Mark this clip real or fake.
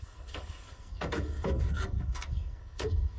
fake